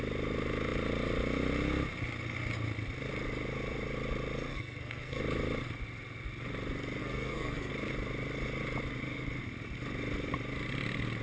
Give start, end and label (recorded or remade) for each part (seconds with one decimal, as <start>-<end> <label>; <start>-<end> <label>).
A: 0.0-4.5 recorded; 4.5-5.2 remade; 5.2-7.0 recorded; 7.0-7.7 remade; 7.7-11.2 recorded